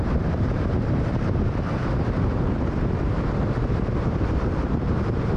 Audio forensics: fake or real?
fake